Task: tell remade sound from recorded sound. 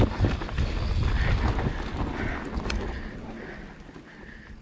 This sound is recorded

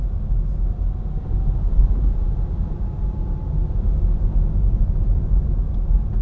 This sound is recorded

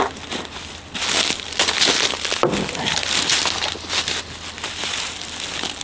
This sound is recorded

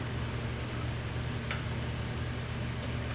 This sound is recorded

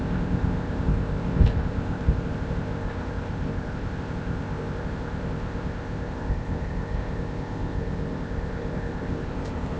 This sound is remade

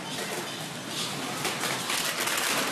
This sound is recorded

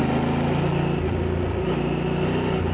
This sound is recorded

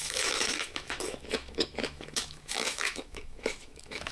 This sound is remade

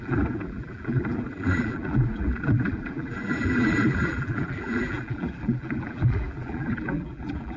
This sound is remade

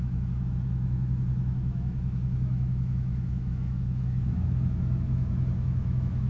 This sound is remade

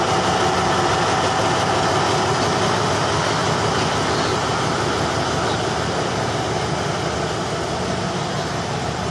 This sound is recorded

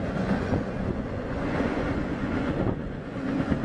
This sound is remade